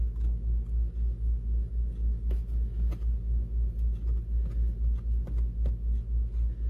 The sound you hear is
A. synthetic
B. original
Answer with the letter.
B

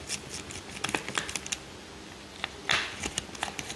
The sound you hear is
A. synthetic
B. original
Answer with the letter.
B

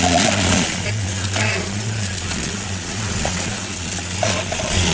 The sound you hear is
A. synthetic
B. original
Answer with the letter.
A